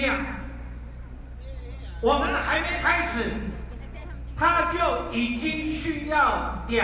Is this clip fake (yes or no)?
no